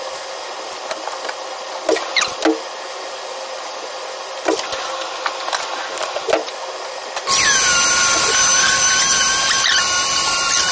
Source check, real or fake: real